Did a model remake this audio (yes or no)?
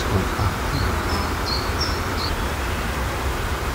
no